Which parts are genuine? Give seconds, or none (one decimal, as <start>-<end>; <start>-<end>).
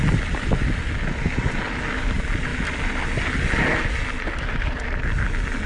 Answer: 0.0-5.7